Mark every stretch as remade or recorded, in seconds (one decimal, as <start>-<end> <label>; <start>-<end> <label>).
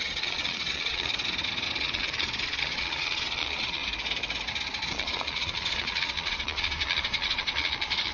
0.0-1.1 remade; 1.1-1.8 recorded; 1.8-3.8 remade; 3.8-4.9 recorded; 4.9-8.1 remade